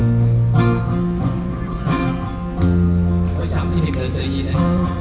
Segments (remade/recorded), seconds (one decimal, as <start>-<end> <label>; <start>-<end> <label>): 0.0-1.2 recorded; 1.2-2.0 remade; 2.0-4.6 recorded; 4.6-5.0 remade